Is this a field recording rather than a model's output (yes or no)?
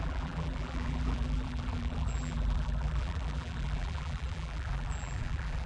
no